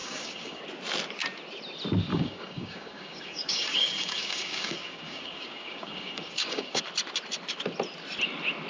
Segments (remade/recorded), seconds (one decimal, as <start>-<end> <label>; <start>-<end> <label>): 0.0-0.6 remade; 0.6-2.1 recorded; 2.1-6.8 remade; 6.8-8.7 recorded